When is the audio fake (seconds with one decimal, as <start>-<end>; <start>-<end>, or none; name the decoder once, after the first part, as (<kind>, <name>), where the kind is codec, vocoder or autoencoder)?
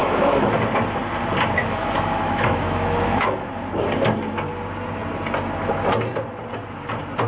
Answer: 0.0-0.6 (autoencoder, DAC-VAE); 1.6-3.5